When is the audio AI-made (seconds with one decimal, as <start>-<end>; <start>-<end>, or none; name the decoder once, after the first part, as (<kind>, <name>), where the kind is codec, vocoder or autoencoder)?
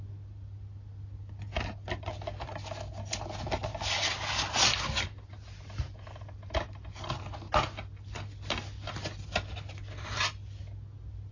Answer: none